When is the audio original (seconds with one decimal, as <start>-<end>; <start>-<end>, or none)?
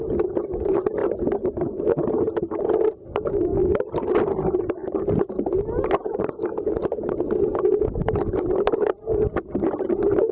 0.0-10.3